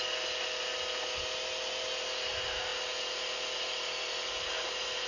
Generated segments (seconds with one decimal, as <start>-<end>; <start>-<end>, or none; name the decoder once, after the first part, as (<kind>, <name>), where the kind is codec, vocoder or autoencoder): none